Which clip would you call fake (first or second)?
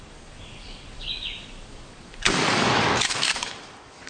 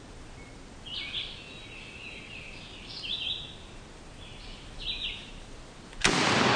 first